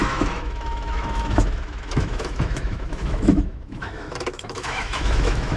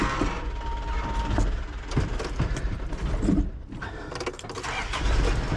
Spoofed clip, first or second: first